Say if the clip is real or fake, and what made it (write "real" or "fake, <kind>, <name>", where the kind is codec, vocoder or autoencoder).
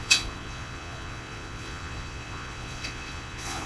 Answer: fake, vocoder, Vocos